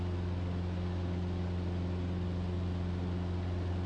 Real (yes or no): yes